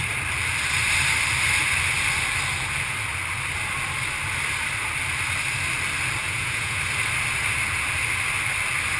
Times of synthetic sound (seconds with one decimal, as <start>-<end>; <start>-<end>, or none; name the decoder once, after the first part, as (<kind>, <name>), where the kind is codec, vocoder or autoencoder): 6.2-6.8 (vocoder, Vocos)